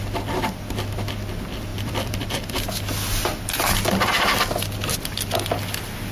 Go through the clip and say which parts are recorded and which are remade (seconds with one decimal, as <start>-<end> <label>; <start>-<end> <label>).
0.0-1.7 recorded; 1.7-3.4 remade; 3.4-6.1 recorded